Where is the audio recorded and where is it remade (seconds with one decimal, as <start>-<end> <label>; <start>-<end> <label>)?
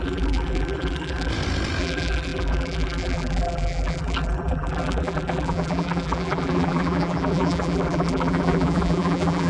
0.0-1.3 remade; 1.3-1.8 recorded; 1.8-9.5 remade